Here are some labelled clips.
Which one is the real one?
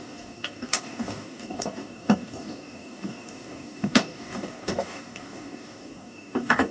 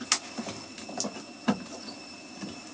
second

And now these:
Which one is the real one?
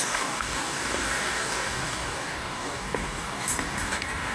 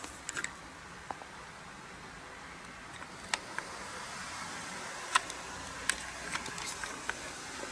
second